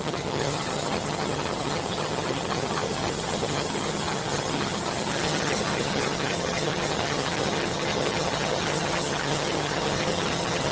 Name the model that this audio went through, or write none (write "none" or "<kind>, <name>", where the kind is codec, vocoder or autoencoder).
vocoder, HiFi-GAN